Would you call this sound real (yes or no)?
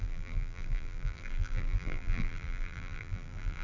no